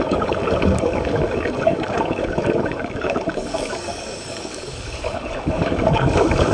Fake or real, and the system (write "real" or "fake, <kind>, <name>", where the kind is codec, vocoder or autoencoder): fake, codec, DAC